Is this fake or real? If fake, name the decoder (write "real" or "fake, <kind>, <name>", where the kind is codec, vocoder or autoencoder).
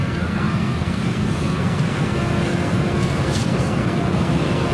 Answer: fake, codec, SNAC